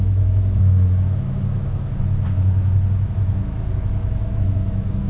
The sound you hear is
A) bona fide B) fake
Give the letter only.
B